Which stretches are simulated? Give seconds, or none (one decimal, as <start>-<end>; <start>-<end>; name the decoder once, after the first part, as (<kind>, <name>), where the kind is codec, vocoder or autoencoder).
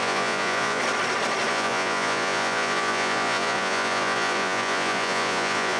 0.0-0.8 (vocoder, Vocos); 1.5-5.8